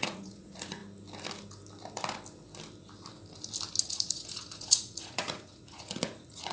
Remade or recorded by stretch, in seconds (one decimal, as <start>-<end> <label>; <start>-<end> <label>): 0.0-0.8 remade; 0.8-3.8 recorded; 3.8-6.5 remade